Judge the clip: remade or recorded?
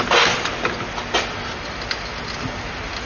recorded